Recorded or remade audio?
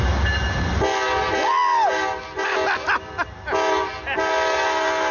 recorded